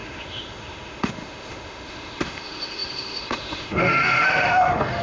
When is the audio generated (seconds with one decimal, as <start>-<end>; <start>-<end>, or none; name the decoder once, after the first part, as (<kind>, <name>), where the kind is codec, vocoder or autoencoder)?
0.0-5.0 (autoencoder, DAC-VAE)